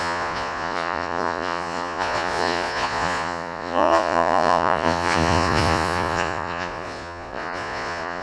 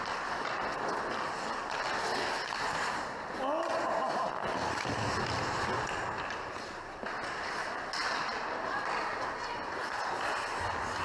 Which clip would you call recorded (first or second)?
second